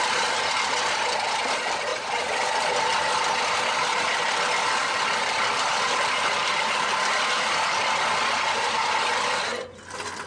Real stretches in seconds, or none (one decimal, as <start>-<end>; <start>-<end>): 0.0-10.3